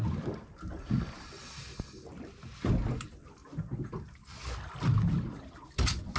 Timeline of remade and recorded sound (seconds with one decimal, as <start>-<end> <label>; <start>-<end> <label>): 0.0-6.2 recorded